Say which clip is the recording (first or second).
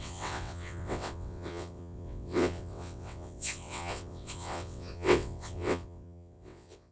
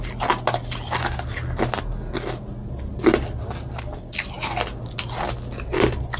second